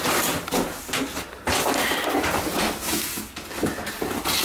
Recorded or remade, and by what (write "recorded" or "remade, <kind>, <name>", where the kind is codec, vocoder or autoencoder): recorded